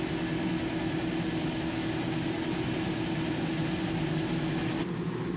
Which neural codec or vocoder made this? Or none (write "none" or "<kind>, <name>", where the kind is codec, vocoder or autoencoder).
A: none